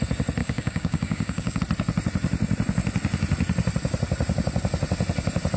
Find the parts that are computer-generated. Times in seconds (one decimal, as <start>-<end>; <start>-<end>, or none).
0.4-1.6